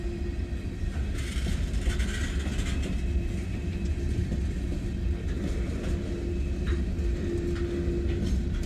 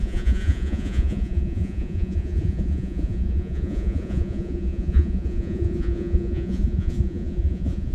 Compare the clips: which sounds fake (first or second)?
second